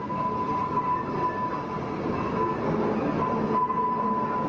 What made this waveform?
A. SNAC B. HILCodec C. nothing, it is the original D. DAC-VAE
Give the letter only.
C